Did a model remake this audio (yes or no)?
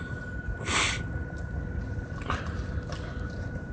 no